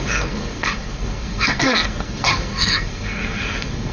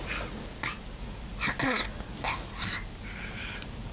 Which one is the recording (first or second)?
second